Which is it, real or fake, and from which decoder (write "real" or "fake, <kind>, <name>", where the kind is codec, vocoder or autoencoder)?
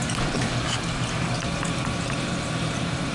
fake, vocoder, BigVGAN v2